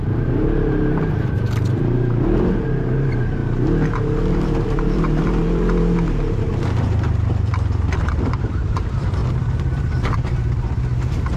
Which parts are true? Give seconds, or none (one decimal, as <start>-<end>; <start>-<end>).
3.4-4.3; 7.5-8.5; 9.2-10.5